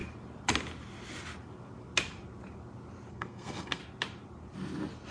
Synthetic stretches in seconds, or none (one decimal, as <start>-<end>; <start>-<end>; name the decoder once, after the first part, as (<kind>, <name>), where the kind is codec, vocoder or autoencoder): 3.1-3.8 (codec, SNAC)

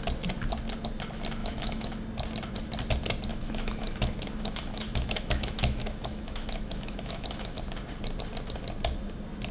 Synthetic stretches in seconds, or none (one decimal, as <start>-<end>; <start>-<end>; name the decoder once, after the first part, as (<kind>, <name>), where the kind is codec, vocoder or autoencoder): 1.4-2.0 (autoencoder, DAC-VAE); 3.3-7.6

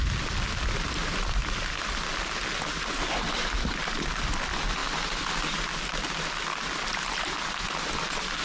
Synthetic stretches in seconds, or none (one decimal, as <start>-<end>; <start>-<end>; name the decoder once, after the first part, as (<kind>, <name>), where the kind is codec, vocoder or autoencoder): none

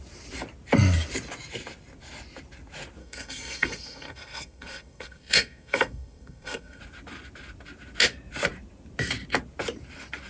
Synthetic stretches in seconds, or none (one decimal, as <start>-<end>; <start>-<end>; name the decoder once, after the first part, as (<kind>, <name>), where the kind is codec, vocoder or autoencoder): 3.0-6.8 (codec, SNAC)

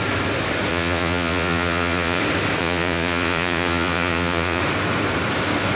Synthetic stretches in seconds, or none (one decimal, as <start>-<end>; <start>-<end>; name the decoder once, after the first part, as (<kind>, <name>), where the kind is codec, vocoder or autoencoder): 0.7-2.2 (vocoder, Vocos); 2.6-4.6